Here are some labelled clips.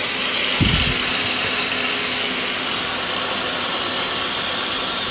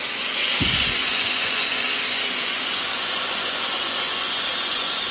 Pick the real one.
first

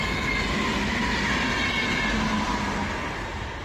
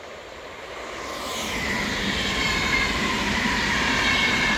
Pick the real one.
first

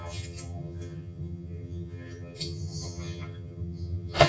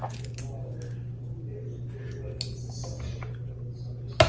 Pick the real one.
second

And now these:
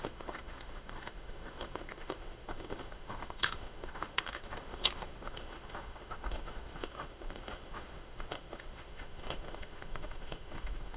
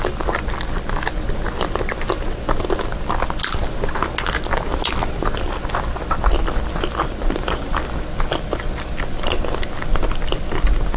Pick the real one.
second